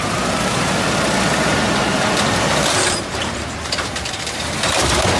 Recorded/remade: remade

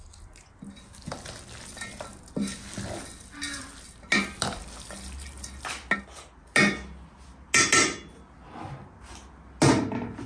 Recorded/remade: recorded